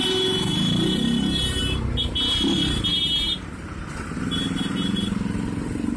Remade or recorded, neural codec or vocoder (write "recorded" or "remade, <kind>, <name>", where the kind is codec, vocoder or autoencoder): recorded